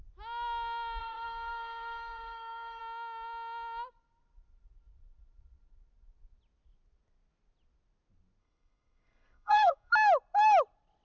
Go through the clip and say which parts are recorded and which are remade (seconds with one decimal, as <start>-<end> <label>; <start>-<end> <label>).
0.0-1.0 recorded; 1.0-2.8 remade; 2.8-8.4 recorded; 8.4-9.9 remade; 9.9-11.0 recorded